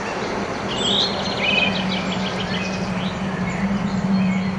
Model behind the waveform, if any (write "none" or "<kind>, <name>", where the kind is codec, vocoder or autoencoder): none